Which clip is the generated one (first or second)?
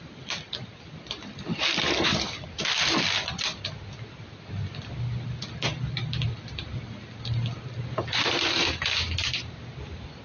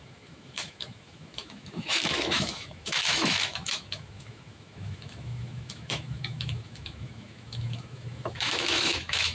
second